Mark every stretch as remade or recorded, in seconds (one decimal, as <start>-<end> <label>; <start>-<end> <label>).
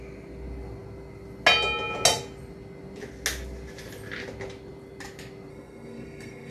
0.0-5.5 recorded; 5.5-6.5 remade